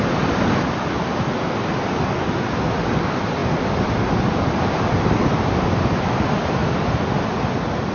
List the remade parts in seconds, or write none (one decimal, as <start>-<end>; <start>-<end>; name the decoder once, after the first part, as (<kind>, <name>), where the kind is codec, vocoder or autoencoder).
none